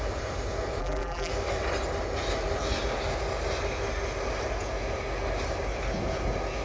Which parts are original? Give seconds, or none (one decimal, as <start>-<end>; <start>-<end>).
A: 0.0-0.8; 1.3-6.6